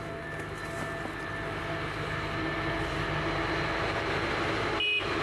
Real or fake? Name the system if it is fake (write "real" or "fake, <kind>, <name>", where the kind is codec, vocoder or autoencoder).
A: real